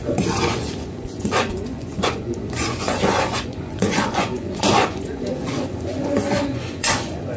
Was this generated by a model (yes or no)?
yes